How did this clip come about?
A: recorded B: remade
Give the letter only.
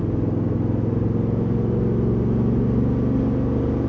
A